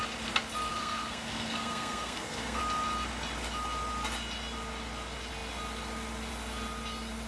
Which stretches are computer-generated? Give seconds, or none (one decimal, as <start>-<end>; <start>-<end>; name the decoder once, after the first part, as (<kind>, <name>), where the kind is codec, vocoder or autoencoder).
0.7-2.6 (codec, SNAC)